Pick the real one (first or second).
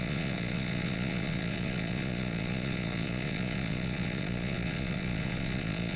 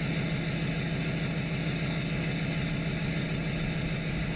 second